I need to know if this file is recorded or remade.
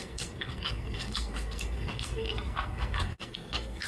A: remade